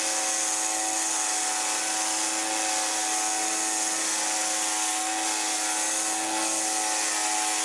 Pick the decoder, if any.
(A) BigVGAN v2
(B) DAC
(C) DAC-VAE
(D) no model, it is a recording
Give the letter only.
D